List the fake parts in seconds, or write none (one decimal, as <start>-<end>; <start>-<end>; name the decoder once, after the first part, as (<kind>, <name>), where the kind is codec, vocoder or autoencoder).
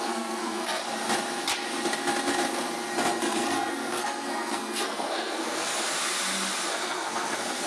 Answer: 0.0-0.8 (codec, SNAC); 3.2-5.7; 6.7-7.7